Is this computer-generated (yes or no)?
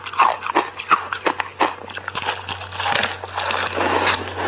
no